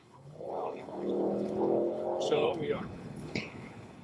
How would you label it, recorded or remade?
remade